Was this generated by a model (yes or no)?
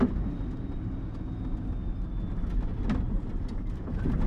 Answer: no